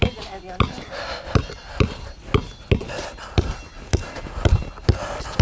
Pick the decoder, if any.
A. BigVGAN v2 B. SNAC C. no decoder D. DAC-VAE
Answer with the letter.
C